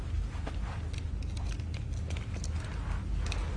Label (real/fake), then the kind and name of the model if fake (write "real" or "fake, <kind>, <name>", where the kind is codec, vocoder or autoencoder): real